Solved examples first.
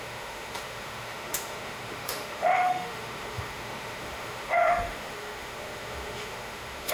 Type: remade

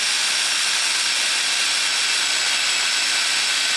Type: recorded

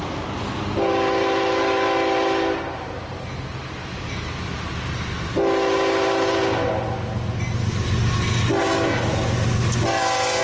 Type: recorded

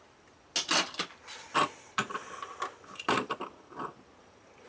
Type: recorded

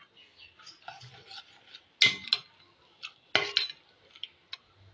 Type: recorded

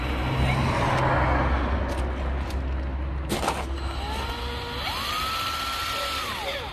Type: recorded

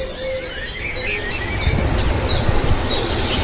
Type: recorded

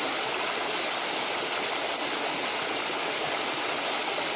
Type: recorded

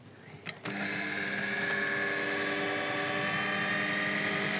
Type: recorded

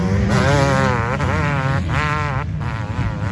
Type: recorded